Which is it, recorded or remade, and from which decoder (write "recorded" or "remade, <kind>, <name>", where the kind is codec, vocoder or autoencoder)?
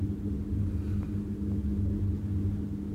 recorded